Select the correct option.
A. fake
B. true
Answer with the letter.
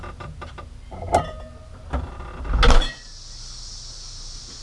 B